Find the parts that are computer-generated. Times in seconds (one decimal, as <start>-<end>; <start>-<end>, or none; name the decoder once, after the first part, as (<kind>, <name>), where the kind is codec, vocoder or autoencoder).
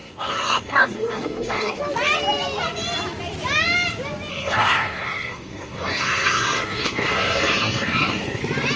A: 0.0-1.8 (codec, SNAC); 4.3-8.4